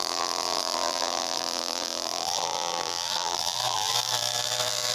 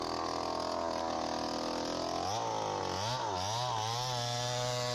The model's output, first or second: first